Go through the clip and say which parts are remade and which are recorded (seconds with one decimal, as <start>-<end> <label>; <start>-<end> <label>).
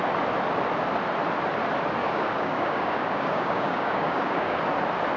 0.0-2.0 recorded; 2.0-4.6 remade; 4.6-5.2 recorded